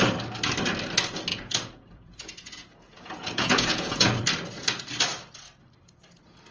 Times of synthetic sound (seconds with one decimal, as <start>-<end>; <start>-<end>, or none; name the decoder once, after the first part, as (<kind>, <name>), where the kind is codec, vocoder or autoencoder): 1.3-4.2 (vocoder, Vocos)

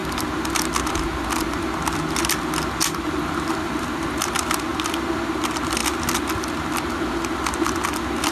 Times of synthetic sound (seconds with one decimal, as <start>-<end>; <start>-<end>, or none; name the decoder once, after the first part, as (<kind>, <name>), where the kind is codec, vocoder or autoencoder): none

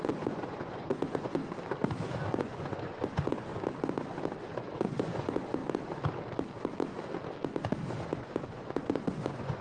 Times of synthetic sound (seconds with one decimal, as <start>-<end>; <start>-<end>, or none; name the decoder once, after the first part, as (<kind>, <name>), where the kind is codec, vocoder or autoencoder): 0.0-1.4 (vocoder, Vocos); 2.4-3.5; 4.4-5.6; 8.2-9.6